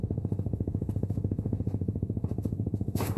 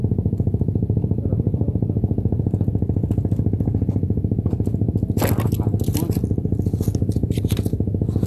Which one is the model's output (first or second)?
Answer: first